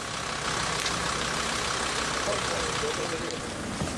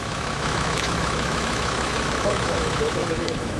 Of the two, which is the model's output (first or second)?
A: second